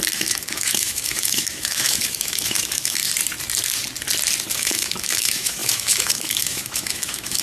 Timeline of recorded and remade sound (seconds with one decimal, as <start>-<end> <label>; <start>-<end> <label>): 0.0-3.0 remade; 3.0-4.5 recorded; 4.5-7.4 remade